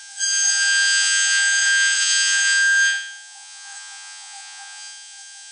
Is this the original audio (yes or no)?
no